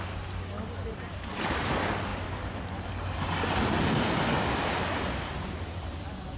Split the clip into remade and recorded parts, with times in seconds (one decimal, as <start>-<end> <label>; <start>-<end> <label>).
0.0-6.4 recorded